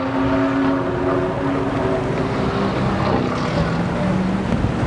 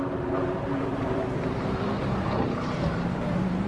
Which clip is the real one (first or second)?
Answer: first